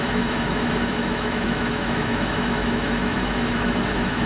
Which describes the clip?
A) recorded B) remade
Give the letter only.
B